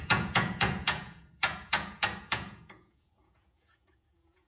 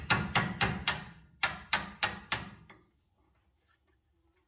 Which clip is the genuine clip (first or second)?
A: second